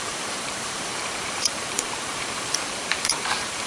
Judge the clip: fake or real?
fake